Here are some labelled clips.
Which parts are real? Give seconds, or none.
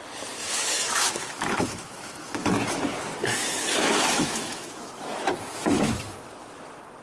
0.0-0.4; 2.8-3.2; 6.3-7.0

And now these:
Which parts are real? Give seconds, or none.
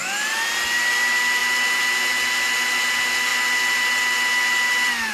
0.0-5.1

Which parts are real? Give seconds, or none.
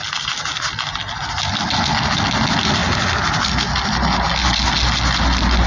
0.0-5.7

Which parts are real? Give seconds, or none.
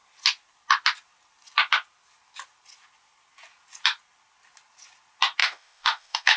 0.0-5.4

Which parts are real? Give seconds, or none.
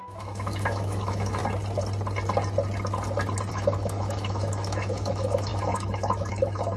1.4-3.5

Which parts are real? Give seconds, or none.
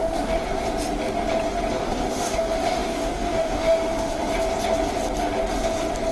0.4-1.8; 4.3-6.1